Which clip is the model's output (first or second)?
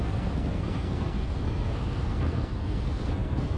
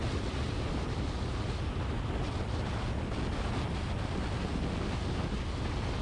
first